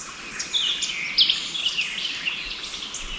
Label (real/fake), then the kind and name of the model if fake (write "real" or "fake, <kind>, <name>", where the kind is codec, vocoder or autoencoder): real